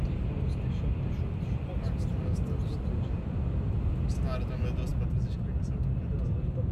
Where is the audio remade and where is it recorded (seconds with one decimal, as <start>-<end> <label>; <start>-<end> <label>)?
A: 0.0-6.7 recorded